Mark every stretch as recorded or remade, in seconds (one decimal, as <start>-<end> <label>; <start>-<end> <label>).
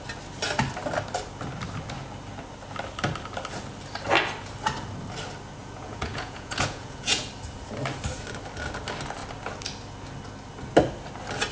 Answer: 0.0-5.6 recorded; 5.6-7.3 remade; 7.3-11.5 recorded